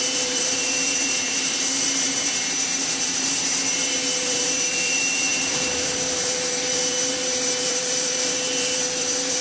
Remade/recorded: remade